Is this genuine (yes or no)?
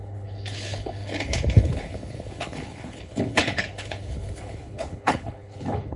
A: no